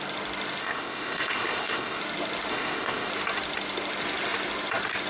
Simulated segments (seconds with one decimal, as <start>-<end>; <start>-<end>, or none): 0.6-2.0; 2.5-3.1